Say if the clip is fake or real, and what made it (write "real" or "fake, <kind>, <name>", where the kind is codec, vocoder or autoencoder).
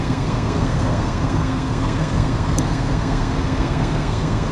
fake, codec, SNAC